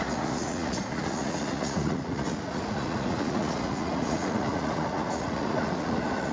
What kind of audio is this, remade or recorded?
remade